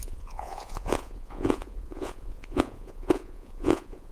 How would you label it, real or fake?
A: fake